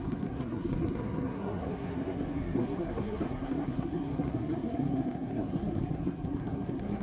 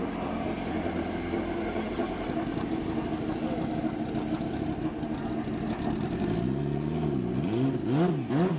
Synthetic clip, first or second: first